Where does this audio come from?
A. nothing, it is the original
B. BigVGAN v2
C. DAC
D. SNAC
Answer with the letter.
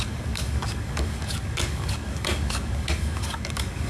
C